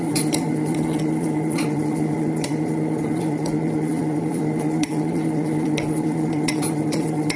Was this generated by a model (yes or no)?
yes